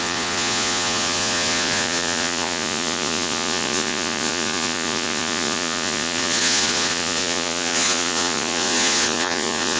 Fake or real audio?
fake